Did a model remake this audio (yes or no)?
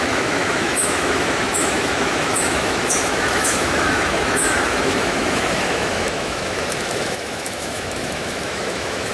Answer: yes